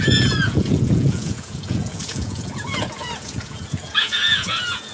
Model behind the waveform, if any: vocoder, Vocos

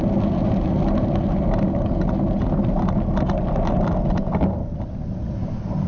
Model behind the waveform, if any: none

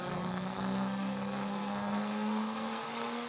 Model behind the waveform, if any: codec, SNAC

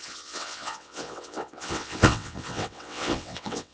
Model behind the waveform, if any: vocoder, WaveNeXt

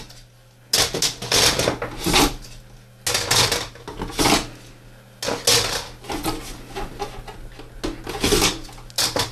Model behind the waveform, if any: none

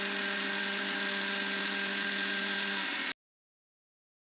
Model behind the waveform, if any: none